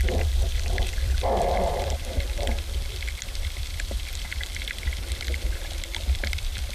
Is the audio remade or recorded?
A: remade